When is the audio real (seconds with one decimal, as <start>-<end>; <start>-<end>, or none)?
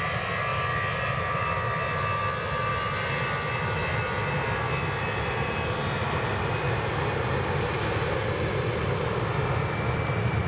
0.0-10.5